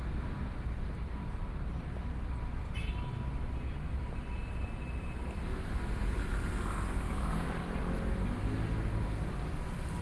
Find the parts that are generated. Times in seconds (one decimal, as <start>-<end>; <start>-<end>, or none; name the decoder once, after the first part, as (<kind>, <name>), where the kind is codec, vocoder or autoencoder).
none